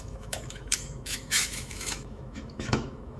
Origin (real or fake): fake